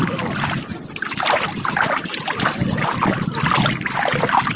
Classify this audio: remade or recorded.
recorded